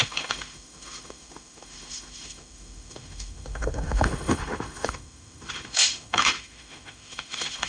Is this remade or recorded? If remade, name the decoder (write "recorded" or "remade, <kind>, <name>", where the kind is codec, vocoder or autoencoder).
remade, autoencoder, DAC-VAE